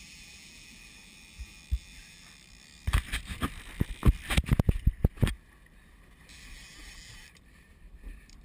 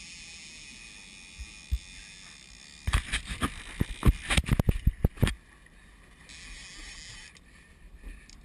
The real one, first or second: second